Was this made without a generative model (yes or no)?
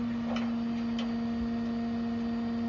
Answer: yes